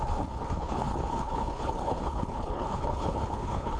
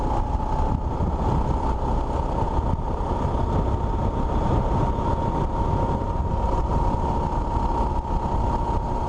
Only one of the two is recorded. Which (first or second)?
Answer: second